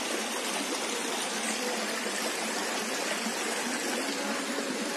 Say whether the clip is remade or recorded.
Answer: recorded